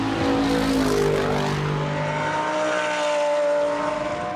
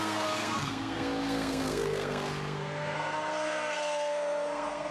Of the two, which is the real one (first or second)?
first